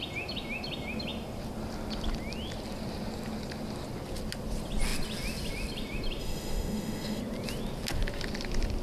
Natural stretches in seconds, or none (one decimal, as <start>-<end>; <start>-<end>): 0.0-6.2; 7.2-8.8